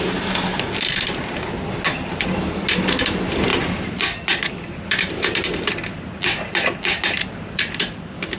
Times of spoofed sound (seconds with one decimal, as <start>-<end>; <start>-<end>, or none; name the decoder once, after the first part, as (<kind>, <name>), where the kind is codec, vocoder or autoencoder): none